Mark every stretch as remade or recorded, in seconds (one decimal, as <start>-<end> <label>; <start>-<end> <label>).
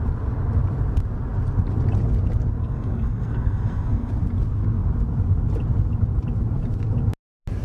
0.0-2.6 recorded; 2.6-4.1 remade; 4.1-7.6 recorded